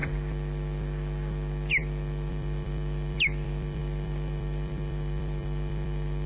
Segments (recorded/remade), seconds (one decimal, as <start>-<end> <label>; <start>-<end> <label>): 0.0-2.3 recorded; 2.3-6.3 remade